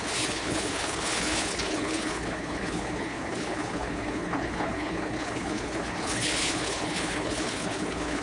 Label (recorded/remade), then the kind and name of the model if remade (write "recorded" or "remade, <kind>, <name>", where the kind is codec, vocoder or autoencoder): remade, codec, HILCodec